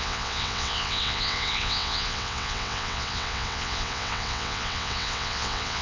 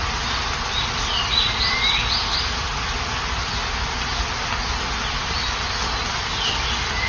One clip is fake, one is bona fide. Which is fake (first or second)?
first